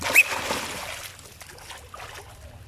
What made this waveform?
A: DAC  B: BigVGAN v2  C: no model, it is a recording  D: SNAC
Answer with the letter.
C